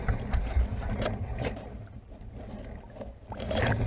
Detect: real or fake fake